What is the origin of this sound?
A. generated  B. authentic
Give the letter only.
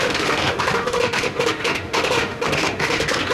A